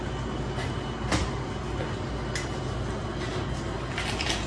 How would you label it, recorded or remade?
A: recorded